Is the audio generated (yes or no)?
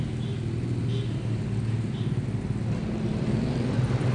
no